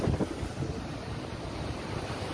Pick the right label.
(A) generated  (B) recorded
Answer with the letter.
B